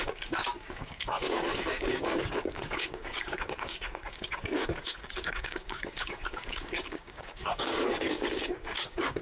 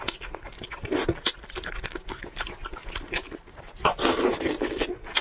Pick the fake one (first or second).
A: first